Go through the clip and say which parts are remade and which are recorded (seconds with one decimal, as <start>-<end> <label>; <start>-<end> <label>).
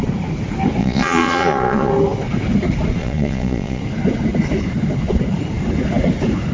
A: 0.0-0.8 recorded; 0.8-1.9 remade; 1.9-3.0 recorded; 3.0-3.8 remade; 3.8-6.5 recorded